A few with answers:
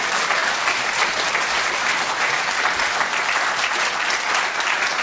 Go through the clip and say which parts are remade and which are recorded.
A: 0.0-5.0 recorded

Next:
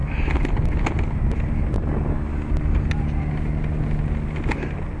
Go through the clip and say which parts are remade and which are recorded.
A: 0.0-5.0 recorded

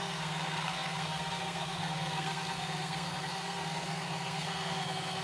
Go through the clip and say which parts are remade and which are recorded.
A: 0.0-5.2 remade

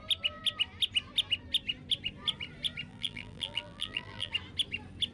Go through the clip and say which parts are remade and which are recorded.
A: 0.0-2.9 recorded; 2.9-4.3 remade; 4.3-5.1 recorded

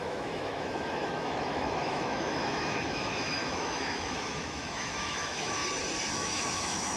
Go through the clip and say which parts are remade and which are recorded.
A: 0.0-5.6 remade; 5.6-6.1 recorded; 6.1-7.0 remade